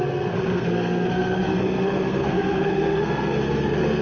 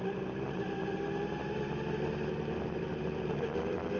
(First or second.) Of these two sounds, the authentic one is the second